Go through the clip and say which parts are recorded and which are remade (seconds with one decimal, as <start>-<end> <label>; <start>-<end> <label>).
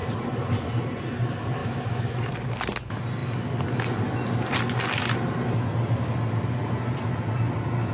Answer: 0.0-1.6 recorded; 1.6-2.3 remade; 2.3-7.9 recorded